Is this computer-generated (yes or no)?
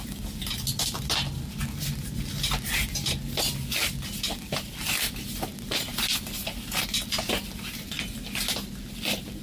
no